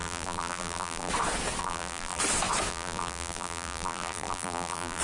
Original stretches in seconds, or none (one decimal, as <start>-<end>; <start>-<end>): 1.1-1.6; 2.2-2.7